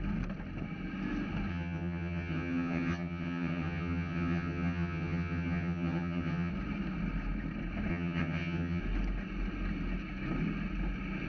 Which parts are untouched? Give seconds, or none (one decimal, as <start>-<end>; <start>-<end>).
0.0-1.5; 6.5-7.9; 8.8-11.3

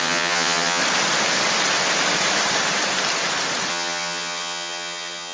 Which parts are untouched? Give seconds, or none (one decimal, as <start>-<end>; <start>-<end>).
0.8-3.7

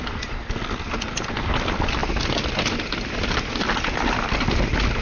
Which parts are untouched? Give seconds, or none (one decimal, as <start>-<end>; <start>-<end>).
0.0-5.0

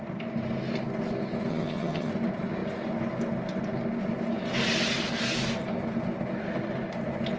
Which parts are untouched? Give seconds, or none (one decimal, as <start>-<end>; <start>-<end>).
0.0-1.5; 2.1-7.4

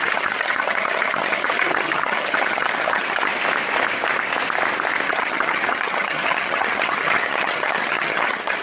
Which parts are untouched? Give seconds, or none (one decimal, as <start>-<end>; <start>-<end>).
3.3-5.1

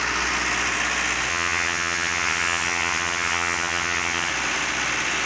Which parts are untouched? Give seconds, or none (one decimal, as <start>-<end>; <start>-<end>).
0.0-1.3; 4.3-5.3